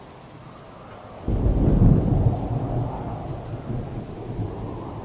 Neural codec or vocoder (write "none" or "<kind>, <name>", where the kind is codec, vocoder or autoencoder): none